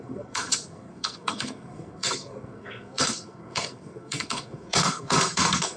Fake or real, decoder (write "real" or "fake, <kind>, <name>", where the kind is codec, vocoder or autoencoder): fake, codec, SNAC